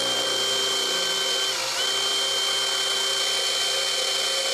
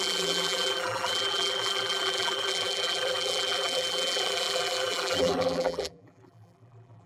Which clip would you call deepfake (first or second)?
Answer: second